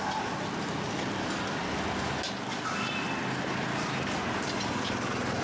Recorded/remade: recorded